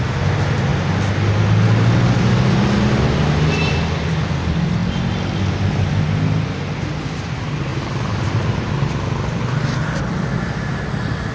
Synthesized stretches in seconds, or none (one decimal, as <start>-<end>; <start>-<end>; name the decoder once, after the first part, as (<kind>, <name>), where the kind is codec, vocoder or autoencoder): 7.7-8.7 (vocoder, BigVGAN v2)